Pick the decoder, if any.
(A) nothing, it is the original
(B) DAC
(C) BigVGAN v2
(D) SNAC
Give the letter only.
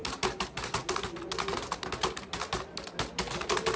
A